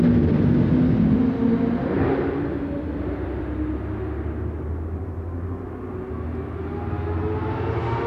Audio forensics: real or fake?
real